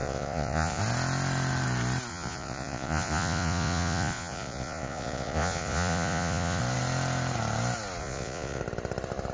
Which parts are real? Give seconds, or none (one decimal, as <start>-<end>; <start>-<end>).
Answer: 0.8-2.1; 6.6-8.0; 8.6-9.3